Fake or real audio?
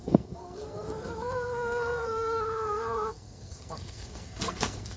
fake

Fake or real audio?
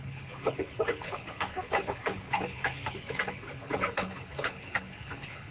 fake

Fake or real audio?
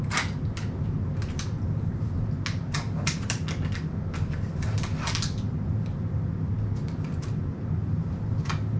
real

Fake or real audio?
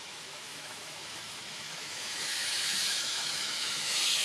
fake